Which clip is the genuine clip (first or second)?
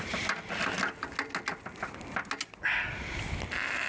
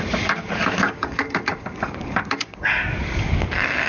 first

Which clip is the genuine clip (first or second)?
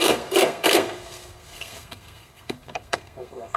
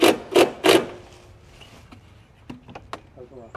second